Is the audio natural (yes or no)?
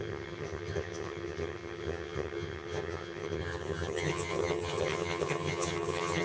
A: no